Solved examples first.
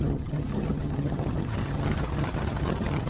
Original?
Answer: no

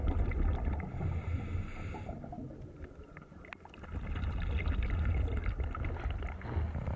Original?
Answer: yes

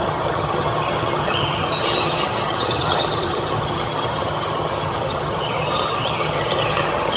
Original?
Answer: no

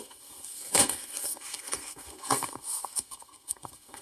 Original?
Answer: no